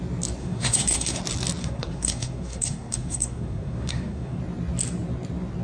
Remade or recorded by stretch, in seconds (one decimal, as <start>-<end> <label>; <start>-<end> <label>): 0.0-0.4 recorded; 0.4-1.2 remade; 1.2-1.6 recorded; 1.6-4.4 remade; 4.4-5.6 recorded